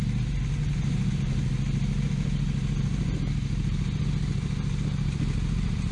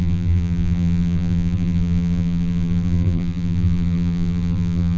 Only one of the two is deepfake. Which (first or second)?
second